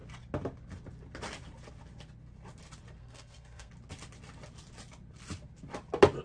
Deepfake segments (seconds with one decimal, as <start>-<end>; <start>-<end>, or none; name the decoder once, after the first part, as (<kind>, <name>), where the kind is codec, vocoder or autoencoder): 3.0-3.7 (codec, SNAC)